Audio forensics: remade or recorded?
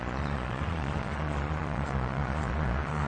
remade